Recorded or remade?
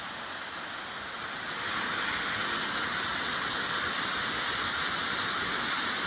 recorded